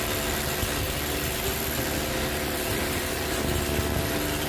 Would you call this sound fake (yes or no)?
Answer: no